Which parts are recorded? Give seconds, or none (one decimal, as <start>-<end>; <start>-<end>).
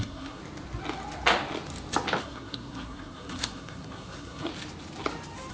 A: 0.4-2.2; 4.5-5.5